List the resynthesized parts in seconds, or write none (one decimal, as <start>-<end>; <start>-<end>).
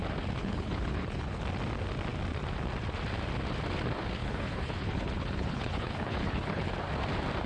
0.4-1.4; 4.2-6.7